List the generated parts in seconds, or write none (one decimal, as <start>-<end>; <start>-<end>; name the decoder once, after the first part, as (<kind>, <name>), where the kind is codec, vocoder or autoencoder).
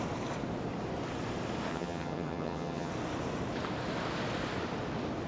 1.7-2.9 (vocoder, HiFi-GAN)